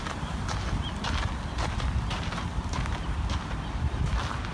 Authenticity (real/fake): real